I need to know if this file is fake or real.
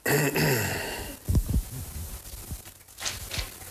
real